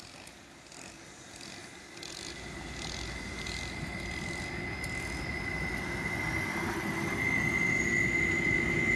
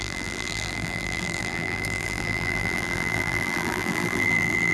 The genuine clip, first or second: first